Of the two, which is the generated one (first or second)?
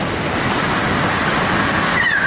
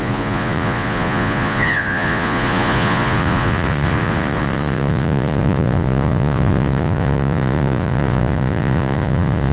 second